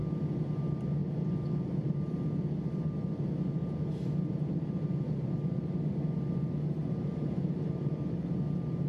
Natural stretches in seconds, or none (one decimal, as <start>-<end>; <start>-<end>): 0.0-6.8; 8.0-8.9